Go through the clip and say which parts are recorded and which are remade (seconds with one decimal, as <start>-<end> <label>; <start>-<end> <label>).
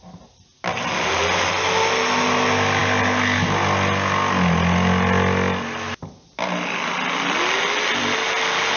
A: 0.0-8.8 recorded